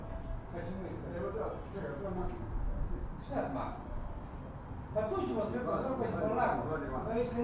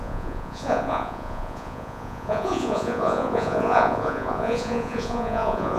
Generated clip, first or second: second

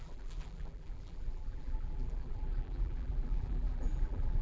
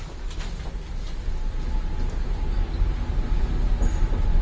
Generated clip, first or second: first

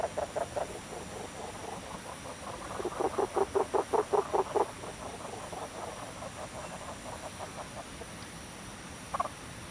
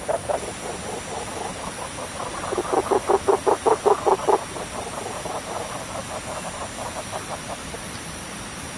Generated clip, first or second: second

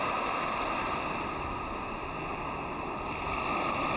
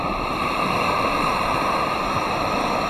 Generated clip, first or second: second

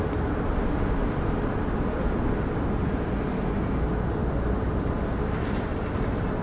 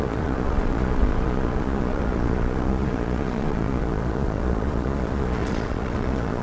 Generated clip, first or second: second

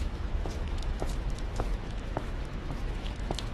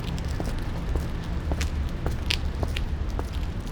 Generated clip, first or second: first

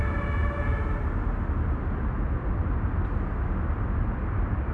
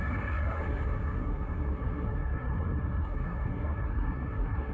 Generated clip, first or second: second